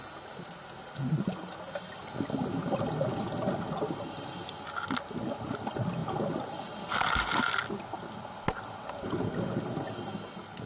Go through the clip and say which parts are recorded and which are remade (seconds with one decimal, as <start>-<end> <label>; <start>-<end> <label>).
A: 0.0-10.7 recorded

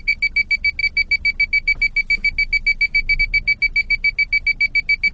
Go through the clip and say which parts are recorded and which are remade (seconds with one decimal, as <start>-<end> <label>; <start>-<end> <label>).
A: 0.0-5.1 recorded

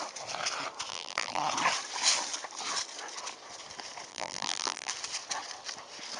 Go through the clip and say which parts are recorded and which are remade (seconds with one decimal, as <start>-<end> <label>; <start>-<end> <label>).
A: 0.0-0.9 recorded; 0.9-1.4 remade; 1.4-4.1 recorded; 4.1-4.9 remade; 4.9-6.2 recorded